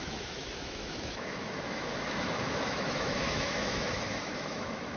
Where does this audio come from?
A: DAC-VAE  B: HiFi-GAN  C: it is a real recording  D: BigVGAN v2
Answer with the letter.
A